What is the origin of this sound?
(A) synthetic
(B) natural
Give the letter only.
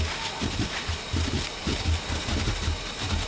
B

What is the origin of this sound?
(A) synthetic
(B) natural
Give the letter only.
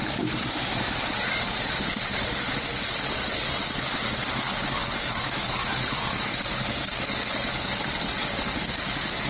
A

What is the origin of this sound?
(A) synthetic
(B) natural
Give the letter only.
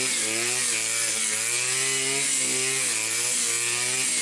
B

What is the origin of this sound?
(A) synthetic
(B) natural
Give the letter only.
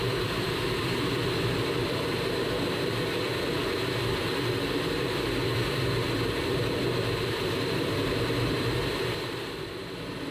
A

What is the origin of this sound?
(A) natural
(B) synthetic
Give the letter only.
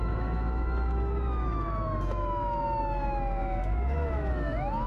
B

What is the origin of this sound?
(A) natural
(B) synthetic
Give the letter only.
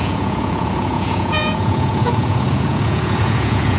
B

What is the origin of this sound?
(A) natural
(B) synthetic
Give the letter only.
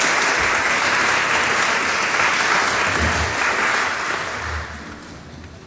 A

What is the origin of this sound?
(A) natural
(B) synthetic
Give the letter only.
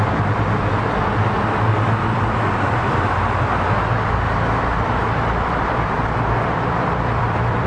B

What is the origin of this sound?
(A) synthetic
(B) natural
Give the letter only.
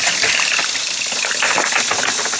B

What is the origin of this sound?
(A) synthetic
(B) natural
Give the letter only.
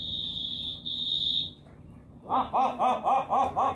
B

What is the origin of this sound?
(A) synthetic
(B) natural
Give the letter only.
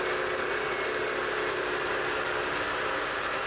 B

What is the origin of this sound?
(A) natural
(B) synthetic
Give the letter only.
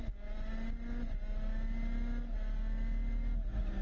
A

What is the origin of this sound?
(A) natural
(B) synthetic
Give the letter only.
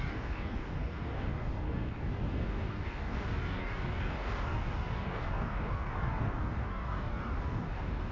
B